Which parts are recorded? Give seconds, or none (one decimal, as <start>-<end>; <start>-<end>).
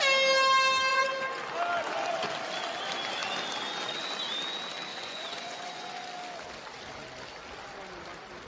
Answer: 0.0-0.9; 1.4-4.9; 5.9-8.5